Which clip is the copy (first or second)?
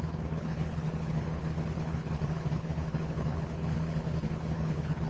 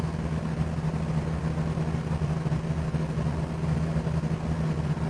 first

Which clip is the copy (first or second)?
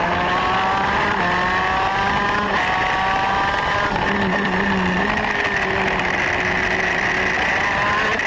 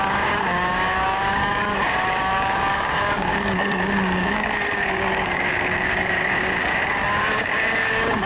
second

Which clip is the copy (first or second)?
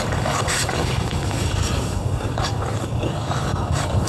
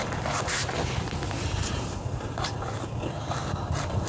first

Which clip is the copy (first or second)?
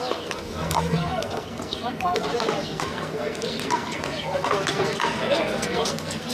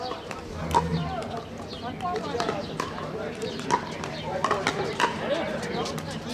first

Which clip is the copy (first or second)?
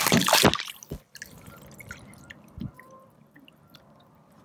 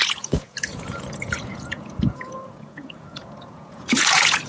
second